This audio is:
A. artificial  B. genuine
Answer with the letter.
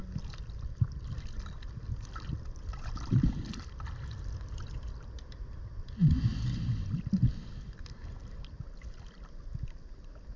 B